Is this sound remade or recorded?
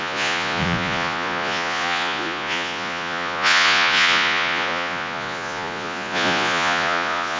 remade